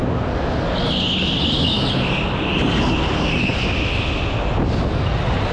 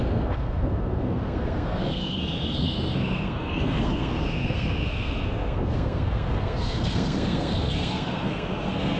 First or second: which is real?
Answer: first